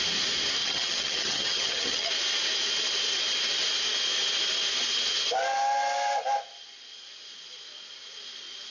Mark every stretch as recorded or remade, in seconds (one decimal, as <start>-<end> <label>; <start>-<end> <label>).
0.0-0.6 recorded; 0.6-2.1 remade; 2.1-8.7 recorded

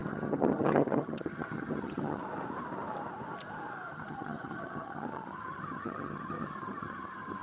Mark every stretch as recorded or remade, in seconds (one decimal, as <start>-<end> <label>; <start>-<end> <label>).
0.0-2.2 remade; 2.2-3.9 recorded; 3.9-7.4 remade

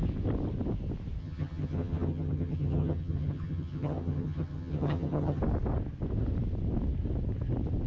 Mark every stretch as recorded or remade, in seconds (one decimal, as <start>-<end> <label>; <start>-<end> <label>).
0.0-1.2 recorded; 1.2-5.4 remade; 5.4-7.9 recorded

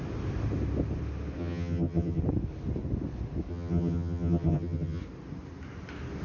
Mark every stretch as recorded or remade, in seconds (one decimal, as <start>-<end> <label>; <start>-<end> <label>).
0.0-1.4 recorded; 1.4-2.2 remade; 2.2-3.5 recorded; 3.5-5.0 remade; 5.0-6.2 recorded

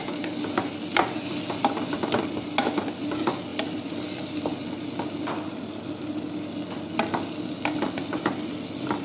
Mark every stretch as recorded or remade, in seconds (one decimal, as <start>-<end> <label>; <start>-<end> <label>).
0.0-9.0 recorded

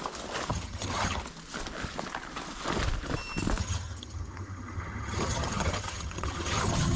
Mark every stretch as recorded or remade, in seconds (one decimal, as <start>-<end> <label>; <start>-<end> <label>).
0.0-0.5 recorded; 0.5-1.2 remade; 1.2-3.6 recorded; 3.6-7.0 remade

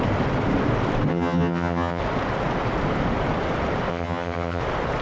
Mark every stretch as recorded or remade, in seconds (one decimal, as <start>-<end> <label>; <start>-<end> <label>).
0.0-1.1 recorded; 1.1-2.0 remade; 2.0-3.9 recorded; 3.9-4.6 remade; 4.6-5.0 recorded